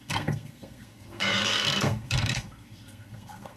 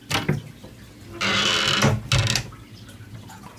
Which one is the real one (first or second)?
second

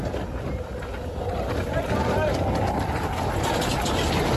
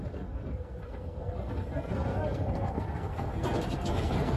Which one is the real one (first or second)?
first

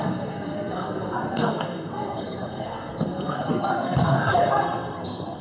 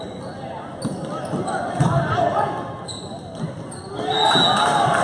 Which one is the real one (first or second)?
second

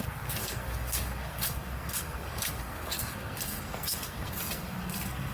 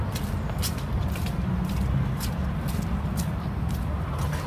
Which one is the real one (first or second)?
second